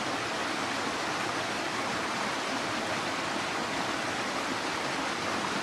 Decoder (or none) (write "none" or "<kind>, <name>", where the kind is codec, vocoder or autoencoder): none